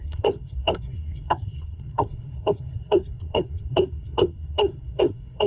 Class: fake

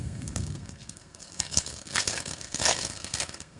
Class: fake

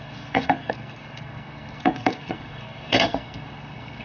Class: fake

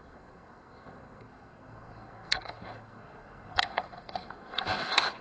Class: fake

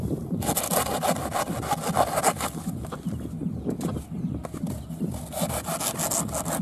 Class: real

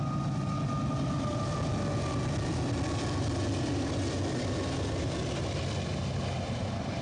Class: real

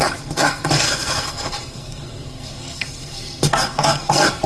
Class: fake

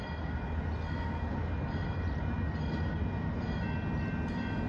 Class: real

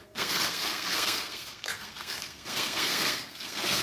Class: fake